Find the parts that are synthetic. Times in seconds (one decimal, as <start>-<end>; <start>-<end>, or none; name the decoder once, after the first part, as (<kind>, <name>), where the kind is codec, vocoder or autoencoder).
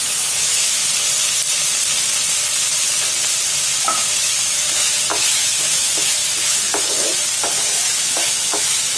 0.0-0.8 (autoencoder, DAC-VAE); 3.8-7.1; 7.6-9.0